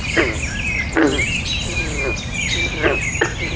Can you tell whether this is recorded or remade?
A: recorded